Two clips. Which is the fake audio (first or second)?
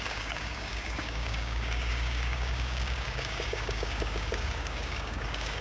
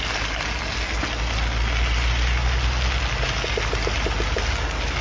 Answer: first